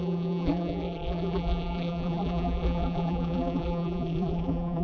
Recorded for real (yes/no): no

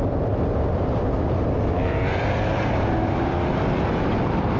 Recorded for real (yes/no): no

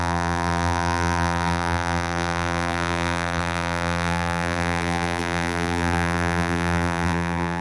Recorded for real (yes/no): no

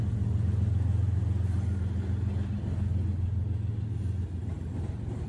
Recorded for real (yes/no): yes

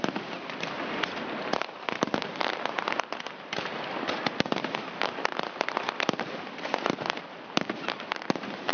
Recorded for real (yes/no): no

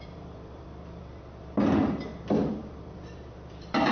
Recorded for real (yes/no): no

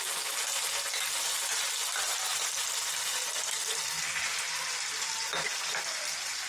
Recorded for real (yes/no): yes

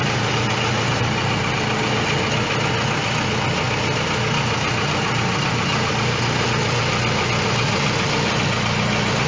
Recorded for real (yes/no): yes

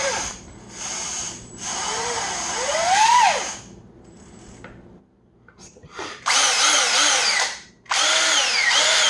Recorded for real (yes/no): no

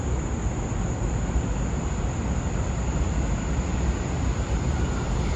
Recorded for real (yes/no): no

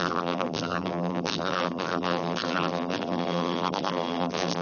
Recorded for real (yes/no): no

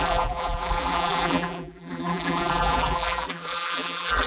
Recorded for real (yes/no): no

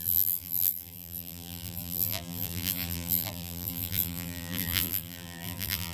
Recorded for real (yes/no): no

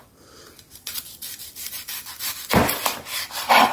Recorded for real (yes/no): no